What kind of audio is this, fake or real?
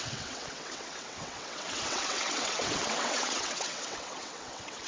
fake